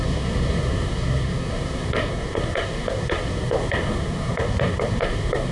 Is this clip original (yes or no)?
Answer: no